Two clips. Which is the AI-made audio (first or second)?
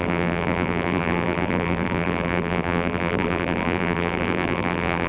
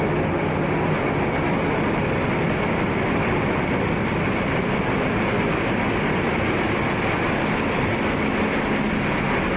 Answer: first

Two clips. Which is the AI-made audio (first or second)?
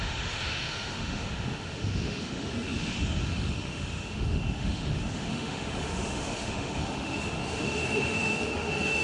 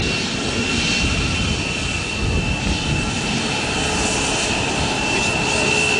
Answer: first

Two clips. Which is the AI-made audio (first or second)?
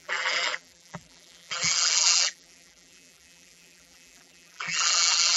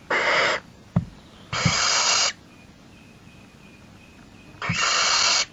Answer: first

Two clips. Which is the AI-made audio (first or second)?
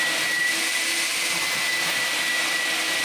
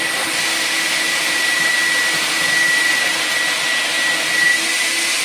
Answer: first